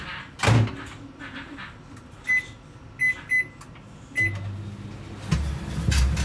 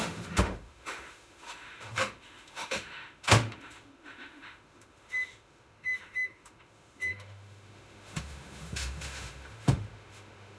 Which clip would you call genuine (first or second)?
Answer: first